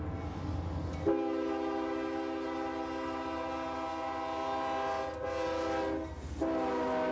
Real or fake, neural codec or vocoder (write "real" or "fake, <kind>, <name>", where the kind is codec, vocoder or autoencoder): real